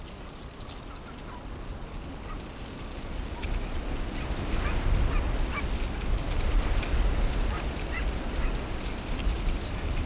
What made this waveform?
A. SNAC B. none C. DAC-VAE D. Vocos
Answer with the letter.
B